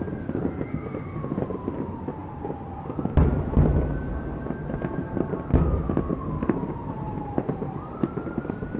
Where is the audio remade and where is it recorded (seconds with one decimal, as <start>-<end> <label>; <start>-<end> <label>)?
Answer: 0.0-6.4 recorded; 6.4-8.8 remade